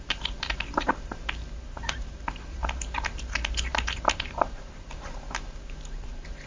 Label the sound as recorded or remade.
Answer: remade